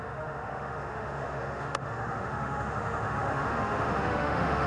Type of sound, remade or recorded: remade